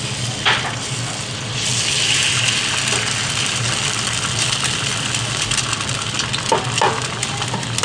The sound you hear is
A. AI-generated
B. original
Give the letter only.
B